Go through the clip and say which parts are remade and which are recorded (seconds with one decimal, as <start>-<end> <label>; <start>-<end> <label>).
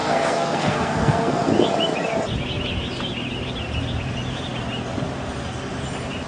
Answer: 0.0-1.5 remade; 1.5-6.3 recorded